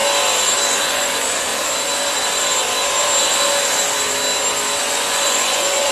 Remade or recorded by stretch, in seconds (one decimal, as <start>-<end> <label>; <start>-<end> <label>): 0.0-0.7 recorded; 0.7-1.5 remade; 1.5-4.8 recorded; 4.8-5.9 remade

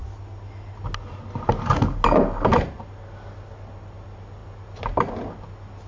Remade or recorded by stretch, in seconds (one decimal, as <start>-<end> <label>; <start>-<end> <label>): 0.0-5.9 recorded

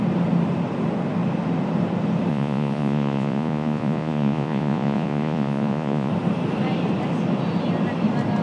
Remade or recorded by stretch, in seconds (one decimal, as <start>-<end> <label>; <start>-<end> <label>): 0.0-2.3 recorded; 2.3-6.1 remade; 6.1-8.4 recorded

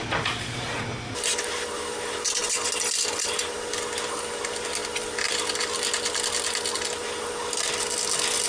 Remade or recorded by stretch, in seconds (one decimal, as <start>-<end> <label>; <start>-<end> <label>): 0.0-8.5 recorded

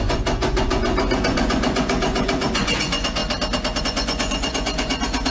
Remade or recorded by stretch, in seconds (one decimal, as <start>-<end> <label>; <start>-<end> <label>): 0.0-3.2 remade; 3.2-3.8 recorded; 3.8-5.3 remade

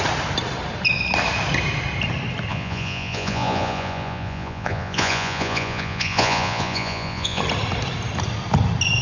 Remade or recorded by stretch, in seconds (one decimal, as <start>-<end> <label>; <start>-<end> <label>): 0.0-2.5 recorded; 2.5-7.4 remade; 7.4-9.0 recorded

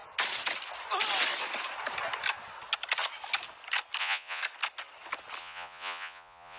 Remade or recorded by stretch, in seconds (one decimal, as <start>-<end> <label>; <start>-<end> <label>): 0.0-4.0 recorded; 4.0-4.4 remade; 4.4-5.4 recorded; 5.4-6.6 remade